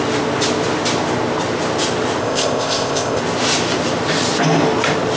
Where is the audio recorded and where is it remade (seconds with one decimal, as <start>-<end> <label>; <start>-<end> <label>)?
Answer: 0.0-2.2 recorded; 2.2-3.2 remade; 3.2-5.2 recorded